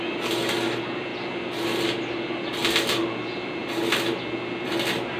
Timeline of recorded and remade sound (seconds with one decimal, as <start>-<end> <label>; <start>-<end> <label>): 0.0-1.1 recorded; 1.1-2.5 remade; 2.5-3.6 recorded; 3.6-4.2 remade; 4.2-5.2 recorded